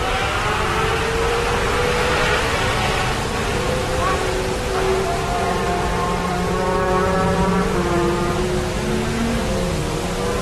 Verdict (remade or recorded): recorded